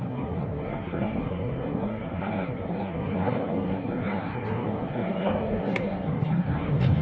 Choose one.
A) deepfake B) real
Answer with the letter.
A